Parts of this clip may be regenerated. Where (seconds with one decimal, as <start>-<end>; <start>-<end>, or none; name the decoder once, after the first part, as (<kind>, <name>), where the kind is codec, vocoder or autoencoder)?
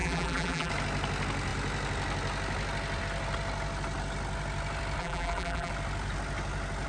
0.0-0.7 (vocoder, BigVGAN v2); 5.0-5.7